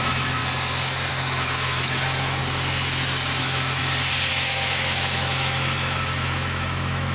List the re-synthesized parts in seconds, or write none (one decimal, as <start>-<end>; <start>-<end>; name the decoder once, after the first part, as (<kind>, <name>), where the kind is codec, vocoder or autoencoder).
0.0-0.4 (autoencoder, DAC-VAE); 1.1-2.4; 3.4-3.8; 4.3-7.1